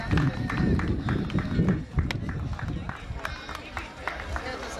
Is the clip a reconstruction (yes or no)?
no